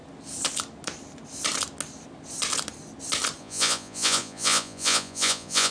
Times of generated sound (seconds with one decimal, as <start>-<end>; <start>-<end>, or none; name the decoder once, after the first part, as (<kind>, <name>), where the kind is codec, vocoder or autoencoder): 3.4-5.7 (vocoder, Vocos)